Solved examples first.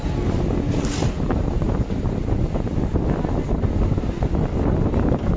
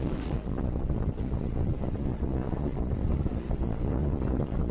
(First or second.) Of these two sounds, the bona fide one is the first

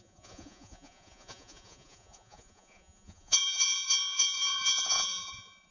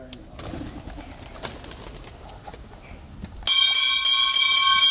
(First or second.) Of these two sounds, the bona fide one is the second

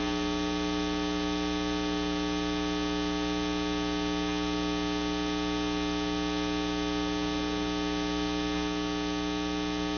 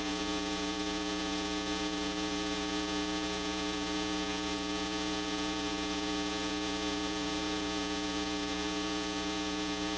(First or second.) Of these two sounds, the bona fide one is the first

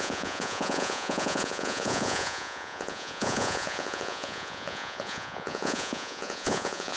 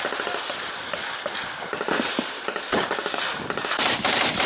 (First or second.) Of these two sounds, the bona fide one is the second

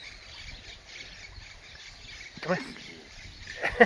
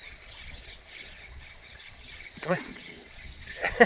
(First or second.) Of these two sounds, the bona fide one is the first